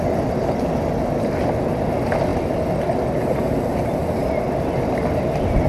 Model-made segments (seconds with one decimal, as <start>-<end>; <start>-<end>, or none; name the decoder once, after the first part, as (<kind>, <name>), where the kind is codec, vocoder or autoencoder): none